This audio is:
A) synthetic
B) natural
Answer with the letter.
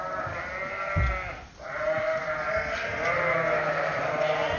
B